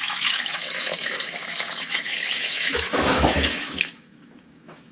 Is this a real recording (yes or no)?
no